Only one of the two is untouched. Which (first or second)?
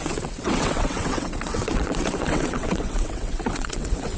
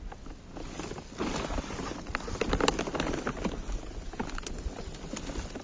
second